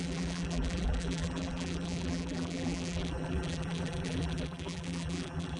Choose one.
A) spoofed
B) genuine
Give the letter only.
A